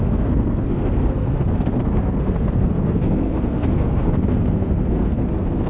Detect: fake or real fake